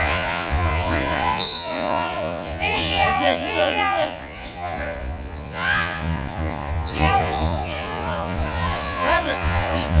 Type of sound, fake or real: fake